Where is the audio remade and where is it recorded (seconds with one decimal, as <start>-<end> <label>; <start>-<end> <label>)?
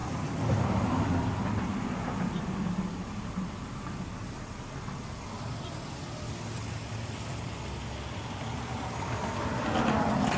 0.0-0.6 remade; 0.6-1.7 recorded; 1.7-4.5 remade; 4.5-8.7 recorded; 8.7-9.2 remade; 9.2-10.4 recorded